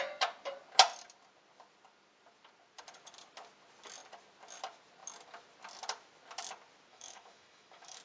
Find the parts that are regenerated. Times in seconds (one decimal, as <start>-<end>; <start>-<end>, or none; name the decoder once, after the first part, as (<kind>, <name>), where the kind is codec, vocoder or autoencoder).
6.9-8.0 (autoencoder, DAC-VAE)